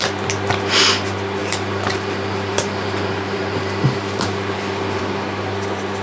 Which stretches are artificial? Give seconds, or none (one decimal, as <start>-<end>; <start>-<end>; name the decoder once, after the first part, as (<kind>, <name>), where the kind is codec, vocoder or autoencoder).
1.4-5.0 (vocoder, BigVGAN v2)